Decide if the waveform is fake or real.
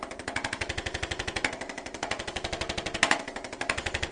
fake